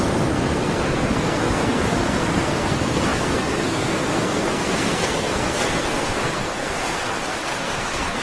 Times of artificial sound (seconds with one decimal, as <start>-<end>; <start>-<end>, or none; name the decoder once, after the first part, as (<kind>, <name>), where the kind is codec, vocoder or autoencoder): 0.0-8.2 (codec, SNAC)